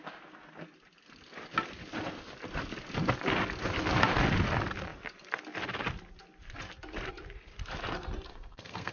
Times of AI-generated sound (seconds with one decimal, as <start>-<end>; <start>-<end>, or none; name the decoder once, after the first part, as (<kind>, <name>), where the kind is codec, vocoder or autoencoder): 8.3-8.9 (codec, SNAC)